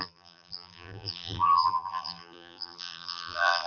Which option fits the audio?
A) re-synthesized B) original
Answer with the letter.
A